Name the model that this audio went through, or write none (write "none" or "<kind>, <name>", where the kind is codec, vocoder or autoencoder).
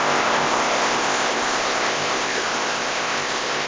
codec, ZipCodec